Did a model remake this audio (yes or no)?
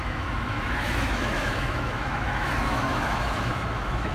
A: yes